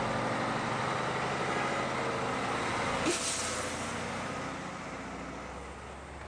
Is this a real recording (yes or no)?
yes